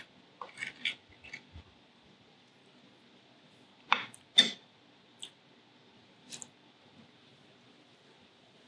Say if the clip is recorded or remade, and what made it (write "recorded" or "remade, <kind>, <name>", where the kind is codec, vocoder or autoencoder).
recorded